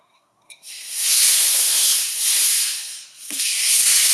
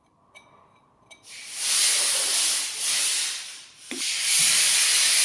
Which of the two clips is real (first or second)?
second